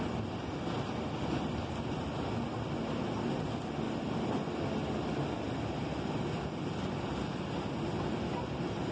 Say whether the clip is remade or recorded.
recorded